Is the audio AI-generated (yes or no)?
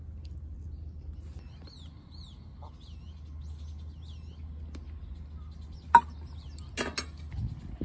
no